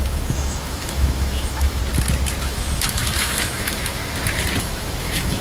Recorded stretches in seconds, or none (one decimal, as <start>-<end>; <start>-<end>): 1.8-2.4; 4.0-4.6